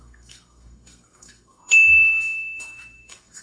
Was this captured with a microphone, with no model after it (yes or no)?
no